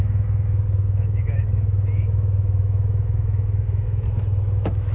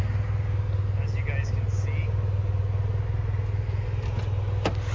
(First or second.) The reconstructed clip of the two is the first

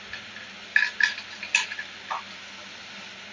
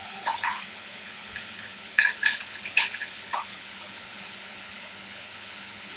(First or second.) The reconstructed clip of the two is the second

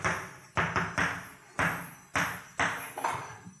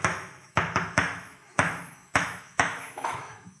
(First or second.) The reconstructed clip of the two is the second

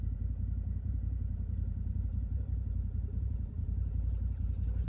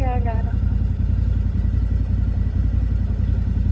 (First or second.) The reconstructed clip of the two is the first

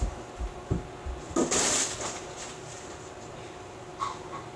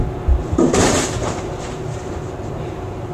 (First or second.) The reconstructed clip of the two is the second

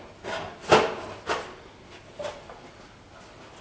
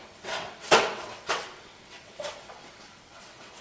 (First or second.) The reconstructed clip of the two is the second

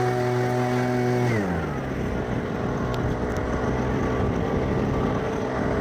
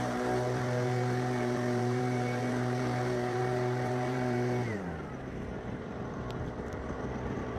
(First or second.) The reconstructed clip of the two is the second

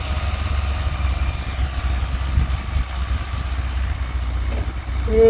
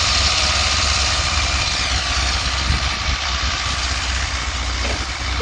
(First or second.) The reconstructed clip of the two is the second